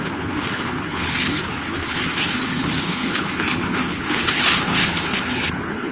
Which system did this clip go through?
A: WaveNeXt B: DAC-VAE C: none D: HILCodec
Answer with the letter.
D